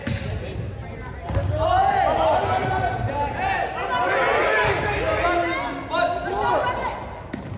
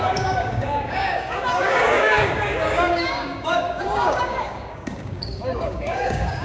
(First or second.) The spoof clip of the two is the second